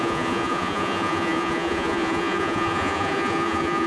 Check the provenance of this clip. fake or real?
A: fake